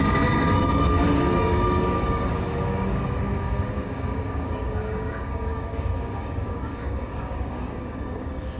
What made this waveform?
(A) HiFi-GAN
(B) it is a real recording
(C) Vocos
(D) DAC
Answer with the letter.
D